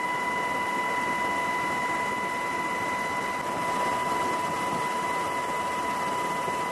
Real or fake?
real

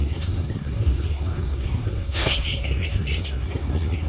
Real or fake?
fake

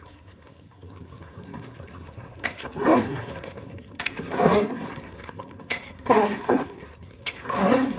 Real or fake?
fake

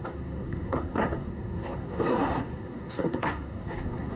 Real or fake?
fake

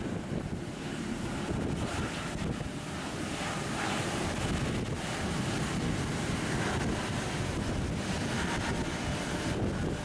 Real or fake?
real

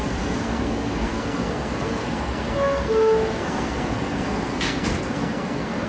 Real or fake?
fake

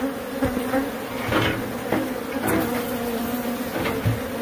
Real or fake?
real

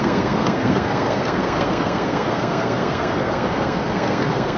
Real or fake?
fake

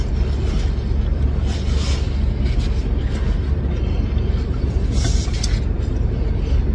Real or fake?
real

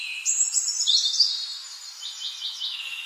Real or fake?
real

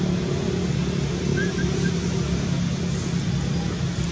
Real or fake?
real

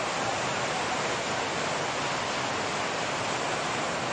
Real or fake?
real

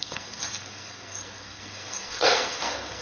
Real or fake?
fake